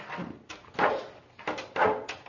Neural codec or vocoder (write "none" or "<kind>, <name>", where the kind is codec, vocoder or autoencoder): none